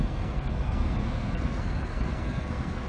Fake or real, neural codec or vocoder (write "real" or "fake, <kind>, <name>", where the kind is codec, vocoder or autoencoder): fake, codec, SNAC